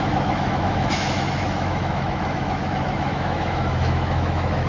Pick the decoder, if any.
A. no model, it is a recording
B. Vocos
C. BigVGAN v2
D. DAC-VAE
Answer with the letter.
D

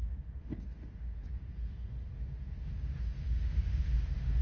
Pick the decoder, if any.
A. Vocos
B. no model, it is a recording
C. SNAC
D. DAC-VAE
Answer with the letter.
D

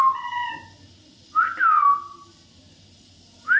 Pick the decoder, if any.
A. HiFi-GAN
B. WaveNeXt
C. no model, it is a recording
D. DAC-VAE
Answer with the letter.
C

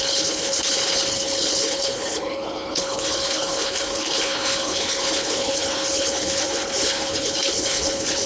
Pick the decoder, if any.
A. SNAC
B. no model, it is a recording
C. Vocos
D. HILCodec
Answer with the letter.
D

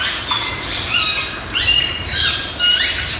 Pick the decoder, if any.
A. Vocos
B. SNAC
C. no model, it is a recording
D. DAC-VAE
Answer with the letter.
C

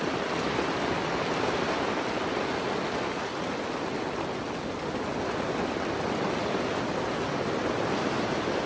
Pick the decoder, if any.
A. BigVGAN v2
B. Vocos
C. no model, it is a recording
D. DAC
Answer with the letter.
C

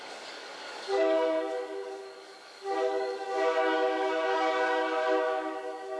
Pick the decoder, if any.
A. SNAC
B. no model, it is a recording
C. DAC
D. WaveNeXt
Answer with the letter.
C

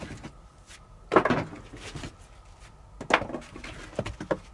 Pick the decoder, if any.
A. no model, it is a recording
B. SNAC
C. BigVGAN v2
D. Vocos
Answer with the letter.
A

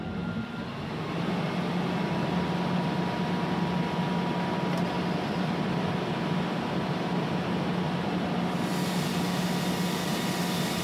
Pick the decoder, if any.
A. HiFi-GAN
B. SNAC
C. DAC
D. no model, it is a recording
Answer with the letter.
D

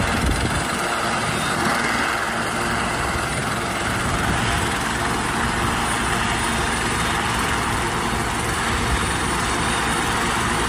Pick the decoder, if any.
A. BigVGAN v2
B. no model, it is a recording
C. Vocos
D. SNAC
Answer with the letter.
B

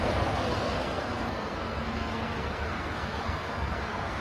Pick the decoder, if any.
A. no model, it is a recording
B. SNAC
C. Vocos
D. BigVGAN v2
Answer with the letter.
B